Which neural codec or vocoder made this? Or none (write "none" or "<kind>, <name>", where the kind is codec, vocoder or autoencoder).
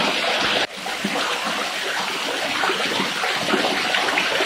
none